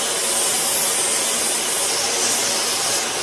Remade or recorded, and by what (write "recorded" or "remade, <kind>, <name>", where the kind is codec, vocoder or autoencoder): recorded